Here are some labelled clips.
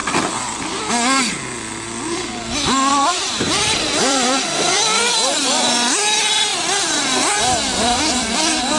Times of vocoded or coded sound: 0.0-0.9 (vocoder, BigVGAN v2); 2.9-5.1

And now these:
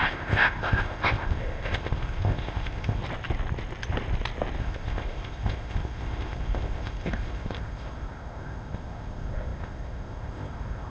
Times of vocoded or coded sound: 0.0-3.0 (codec, ZipCodec); 4.6-10.9

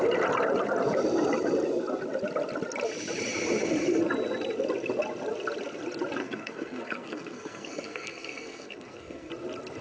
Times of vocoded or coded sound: 6.2-9.3 (codec, SNAC)

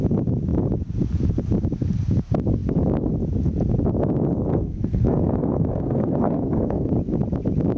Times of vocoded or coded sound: 4.5-6.9 (codec, SNAC)

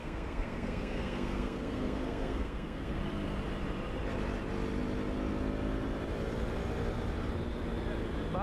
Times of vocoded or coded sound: 0.0-3.0 (codec, SNAC)

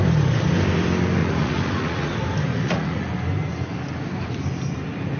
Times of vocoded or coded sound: 1.2-2.1 (vocoder, Vocos); 2.5-3.1

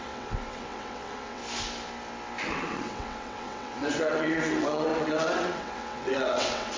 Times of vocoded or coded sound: 0.0-1.4 (vocoder, WaveNeXt); 2.4-6.8